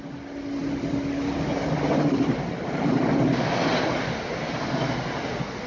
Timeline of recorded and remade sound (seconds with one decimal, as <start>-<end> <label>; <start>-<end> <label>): 0.0-5.7 recorded